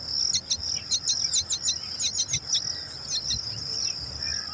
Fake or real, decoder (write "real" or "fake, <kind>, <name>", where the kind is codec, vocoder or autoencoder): real